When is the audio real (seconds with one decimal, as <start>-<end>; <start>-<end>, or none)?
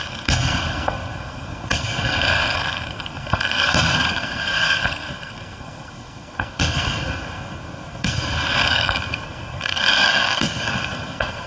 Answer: none